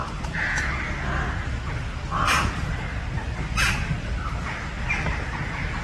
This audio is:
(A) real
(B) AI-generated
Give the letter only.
A